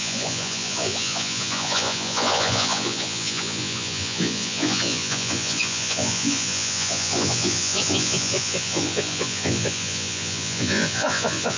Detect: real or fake fake